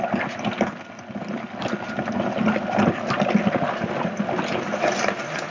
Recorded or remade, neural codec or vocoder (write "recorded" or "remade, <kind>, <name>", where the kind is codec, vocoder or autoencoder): recorded